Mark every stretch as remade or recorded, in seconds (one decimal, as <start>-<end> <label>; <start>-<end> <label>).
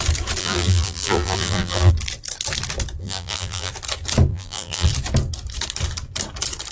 0.0-0.4 recorded; 0.4-1.9 remade; 1.9-3.0 recorded; 3.0-3.7 remade; 3.7-4.3 recorded; 4.3-4.9 remade; 4.9-6.7 recorded